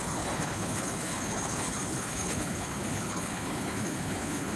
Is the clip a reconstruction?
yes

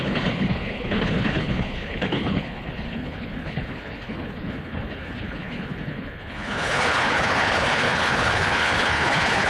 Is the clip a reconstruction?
yes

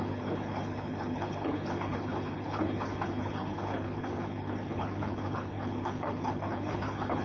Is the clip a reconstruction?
yes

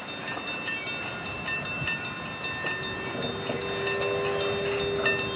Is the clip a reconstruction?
no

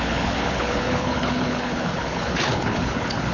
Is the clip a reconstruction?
yes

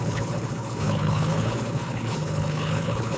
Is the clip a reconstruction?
yes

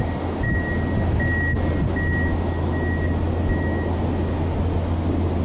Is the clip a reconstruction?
no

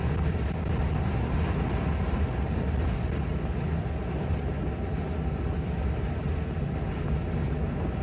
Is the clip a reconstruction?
no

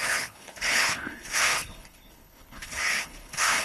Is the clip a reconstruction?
yes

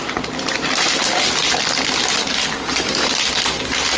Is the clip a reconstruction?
no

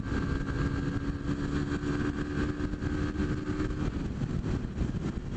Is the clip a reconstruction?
no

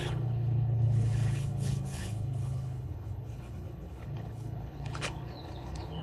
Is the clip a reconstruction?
yes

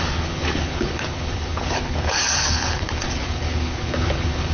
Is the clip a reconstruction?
yes